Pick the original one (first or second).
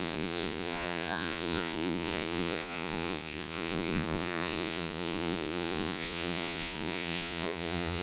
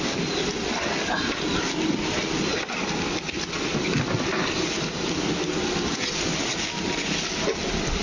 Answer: second